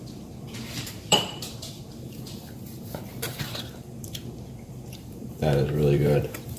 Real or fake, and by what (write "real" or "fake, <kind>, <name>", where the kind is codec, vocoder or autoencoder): fake, vocoder, BigVGAN v2